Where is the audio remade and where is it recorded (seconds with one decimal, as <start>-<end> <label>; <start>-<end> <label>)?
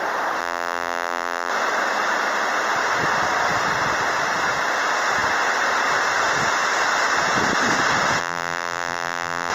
0.0-0.4 recorded; 0.4-1.5 remade; 1.5-8.2 recorded; 8.2-9.5 remade